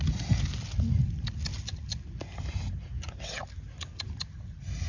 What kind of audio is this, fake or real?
real